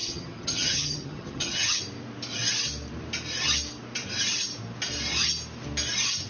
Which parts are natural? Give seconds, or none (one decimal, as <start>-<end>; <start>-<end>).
1.8-6.3